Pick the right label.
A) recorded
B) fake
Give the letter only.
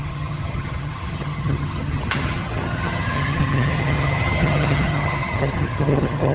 B